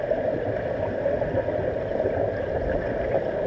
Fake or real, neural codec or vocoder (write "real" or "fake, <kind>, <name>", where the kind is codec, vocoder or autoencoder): real